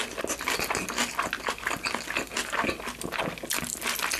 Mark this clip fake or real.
real